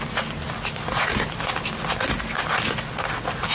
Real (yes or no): yes